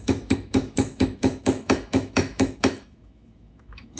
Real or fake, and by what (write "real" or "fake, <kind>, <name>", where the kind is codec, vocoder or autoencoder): fake, autoencoder, DAC-VAE